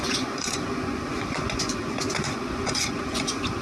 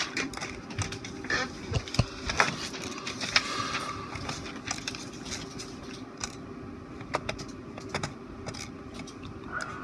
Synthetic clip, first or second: first